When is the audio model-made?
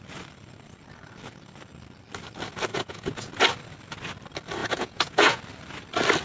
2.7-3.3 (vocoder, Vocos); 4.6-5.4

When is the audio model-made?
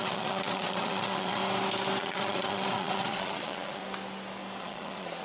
0.0-1.4 (vocoder, Vocos); 2.0-3.8; 4.6-5.2